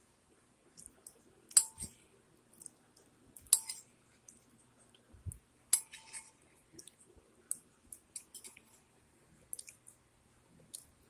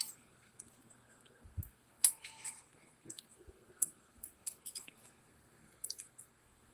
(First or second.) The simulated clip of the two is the second